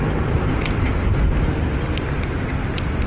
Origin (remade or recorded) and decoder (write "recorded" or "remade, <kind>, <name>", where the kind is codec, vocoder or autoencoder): recorded